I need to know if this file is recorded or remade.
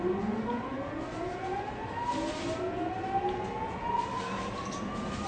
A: recorded